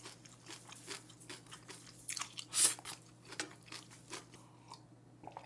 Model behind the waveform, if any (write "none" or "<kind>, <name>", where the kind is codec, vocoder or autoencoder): none